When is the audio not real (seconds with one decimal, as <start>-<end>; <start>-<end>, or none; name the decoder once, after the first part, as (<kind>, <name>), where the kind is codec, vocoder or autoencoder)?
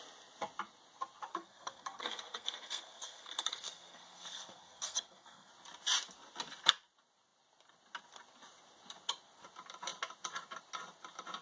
1.3-5.5 (codec, SNAC)